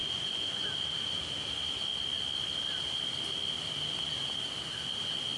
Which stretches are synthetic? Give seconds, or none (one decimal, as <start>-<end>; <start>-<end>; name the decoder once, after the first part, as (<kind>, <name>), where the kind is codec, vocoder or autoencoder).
0.0-0.7 (vocoder, Vocos)